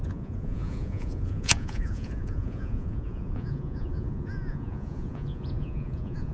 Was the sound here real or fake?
fake